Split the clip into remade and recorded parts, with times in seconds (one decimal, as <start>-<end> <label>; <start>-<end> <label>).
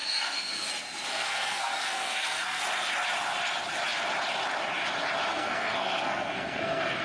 0.0-0.7 remade; 0.7-1.1 recorded; 1.1-2.6 remade; 2.6-5.3 recorded; 5.3-7.0 remade